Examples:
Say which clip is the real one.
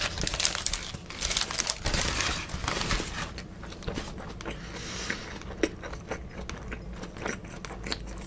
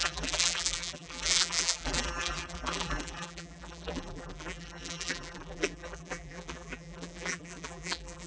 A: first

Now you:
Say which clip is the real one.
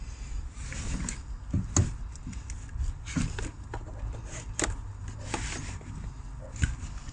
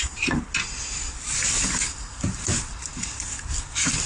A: first